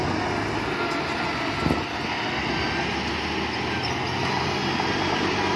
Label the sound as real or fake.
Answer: real